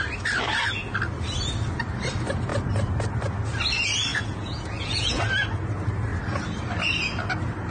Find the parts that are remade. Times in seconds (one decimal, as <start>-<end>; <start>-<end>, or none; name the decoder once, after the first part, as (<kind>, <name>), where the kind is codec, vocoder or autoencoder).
4.1-5.2 (vocoder, Vocos)